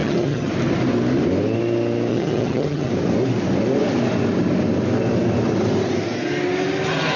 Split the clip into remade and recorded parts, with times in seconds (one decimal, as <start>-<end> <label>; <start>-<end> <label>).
0.0-0.5 remade; 0.5-2.1 recorded; 2.1-2.9 remade; 2.9-7.2 recorded